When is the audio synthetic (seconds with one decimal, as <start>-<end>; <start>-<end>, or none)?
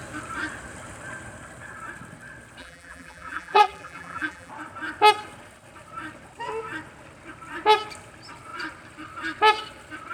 2.6-4.5